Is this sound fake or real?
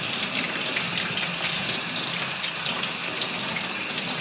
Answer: real